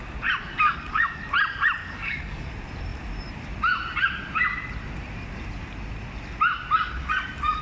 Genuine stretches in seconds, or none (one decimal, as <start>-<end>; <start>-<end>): 0.0-0.4; 1.2-1.8; 2.5-7.6